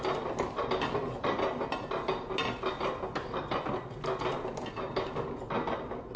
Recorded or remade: recorded